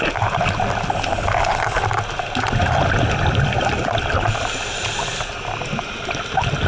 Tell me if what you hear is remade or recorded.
recorded